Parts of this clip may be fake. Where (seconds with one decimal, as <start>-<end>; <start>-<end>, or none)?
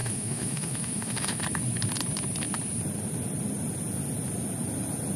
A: 0.0-1.4